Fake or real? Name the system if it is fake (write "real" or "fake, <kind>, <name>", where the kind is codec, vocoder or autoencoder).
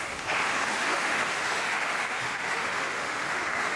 fake, autoencoder, DAC-VAE